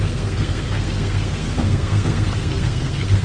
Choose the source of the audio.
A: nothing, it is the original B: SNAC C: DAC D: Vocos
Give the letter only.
B